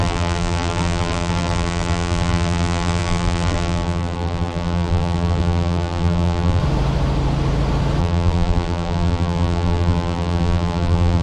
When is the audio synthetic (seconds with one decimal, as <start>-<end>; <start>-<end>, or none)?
0.0-6.6; 8.0-11.2